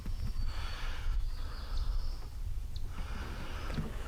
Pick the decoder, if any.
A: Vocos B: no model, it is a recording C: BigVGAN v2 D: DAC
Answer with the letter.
B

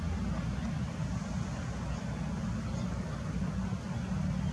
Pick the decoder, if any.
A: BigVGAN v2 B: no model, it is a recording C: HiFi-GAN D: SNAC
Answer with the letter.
B